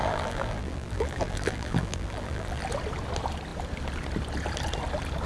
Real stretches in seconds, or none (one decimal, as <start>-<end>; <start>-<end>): 2.6-5.3